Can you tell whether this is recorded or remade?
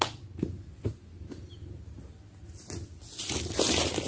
recorded